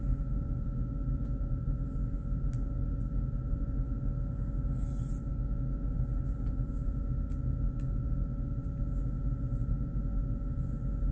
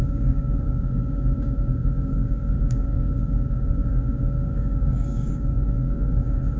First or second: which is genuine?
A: first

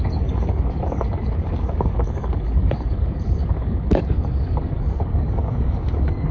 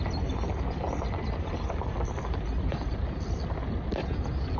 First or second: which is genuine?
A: second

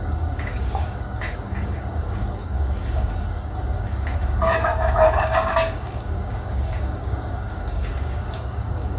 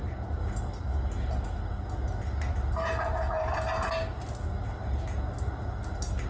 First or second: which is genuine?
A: second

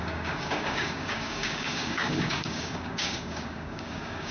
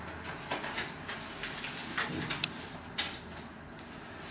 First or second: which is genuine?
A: second